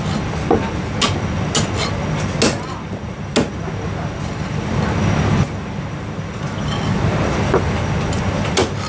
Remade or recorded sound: recorded